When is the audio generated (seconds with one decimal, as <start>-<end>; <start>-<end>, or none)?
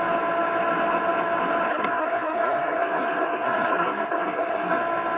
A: 1.7-4.8